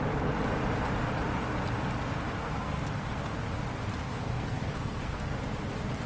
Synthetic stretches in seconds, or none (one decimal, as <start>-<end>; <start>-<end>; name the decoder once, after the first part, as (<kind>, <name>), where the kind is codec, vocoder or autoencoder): 2.4-3.4 (codec, SNAC); 4.1-5.4